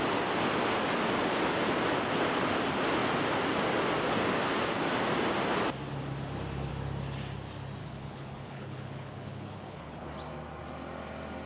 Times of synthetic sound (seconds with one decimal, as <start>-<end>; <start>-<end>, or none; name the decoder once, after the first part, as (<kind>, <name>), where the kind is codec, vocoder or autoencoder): 7.8-10.1 (codec, HILCodec)